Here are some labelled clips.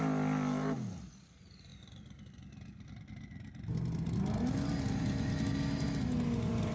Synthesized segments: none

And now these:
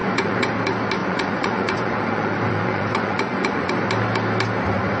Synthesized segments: 0.0-0.5 (vocoder, Vocos); 1.0-3.7

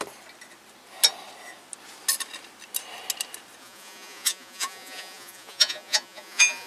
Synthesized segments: 3.6-6.7 (vocoder, Vocos)

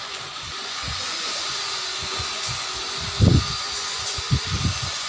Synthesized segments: 0.0-5.1 (vocoder, Vocos)

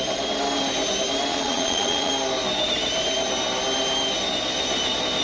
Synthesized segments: 1.3-2.1 (vocoder, Vocos)

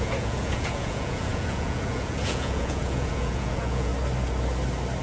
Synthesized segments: 0.0-3.9 (vocoder, Vocos)